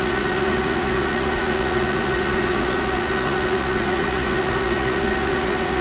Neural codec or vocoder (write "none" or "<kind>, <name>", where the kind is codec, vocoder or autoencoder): vocoder, Vocos